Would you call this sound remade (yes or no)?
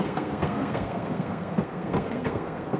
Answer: yes